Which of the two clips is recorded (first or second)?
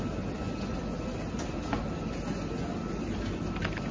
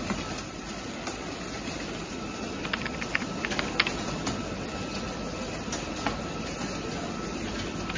first